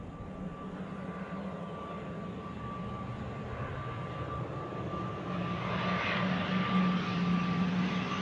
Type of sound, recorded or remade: recorded